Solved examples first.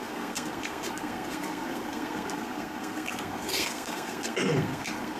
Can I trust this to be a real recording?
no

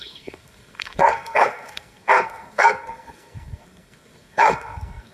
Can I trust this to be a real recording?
no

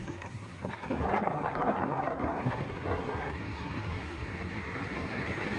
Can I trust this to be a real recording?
no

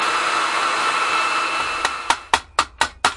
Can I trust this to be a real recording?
yes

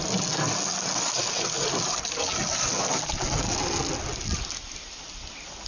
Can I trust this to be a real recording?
yes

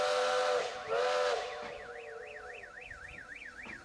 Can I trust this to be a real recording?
yes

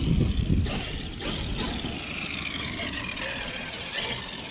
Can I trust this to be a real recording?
yes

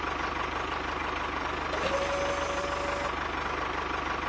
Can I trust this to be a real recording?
yes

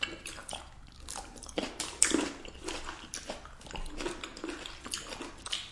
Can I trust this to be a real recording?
yes